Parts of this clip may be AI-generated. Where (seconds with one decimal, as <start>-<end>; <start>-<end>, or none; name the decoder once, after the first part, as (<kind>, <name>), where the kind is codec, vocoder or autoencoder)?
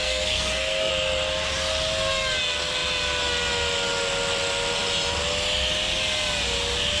0.0-0.9 (codec, SNAC)